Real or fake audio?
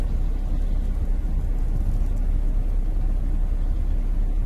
real